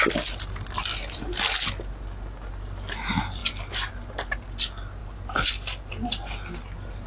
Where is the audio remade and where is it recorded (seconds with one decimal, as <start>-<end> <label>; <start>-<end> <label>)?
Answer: 0.0-3.4 recorded; 3.4-3.9 remade; 3.9-5.0 recorded; 5.0-5.9 remade; 5.9-7.1 recorded